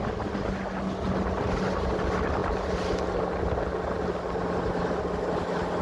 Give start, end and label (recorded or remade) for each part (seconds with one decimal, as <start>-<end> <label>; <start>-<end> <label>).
0.0-5.8 recorded